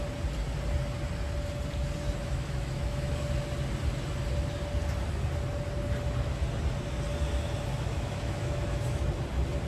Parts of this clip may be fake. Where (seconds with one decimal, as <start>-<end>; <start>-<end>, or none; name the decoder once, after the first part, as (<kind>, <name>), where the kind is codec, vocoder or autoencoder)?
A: 2.2-3.2 (autoencoder, DAC-VAE); 7.7-9.1